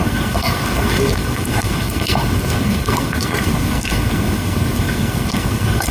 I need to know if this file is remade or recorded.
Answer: remade